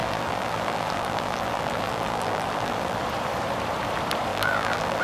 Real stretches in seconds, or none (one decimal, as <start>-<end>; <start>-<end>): 3.0-4.3